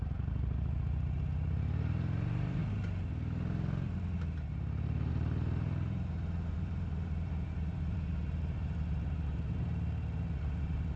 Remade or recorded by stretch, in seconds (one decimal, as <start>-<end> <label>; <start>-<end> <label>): 0.0-2.6 remade; 2.6-5.1 recorded; 5.1-11.0 remade